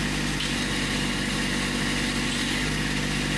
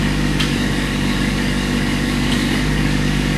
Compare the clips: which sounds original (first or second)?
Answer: first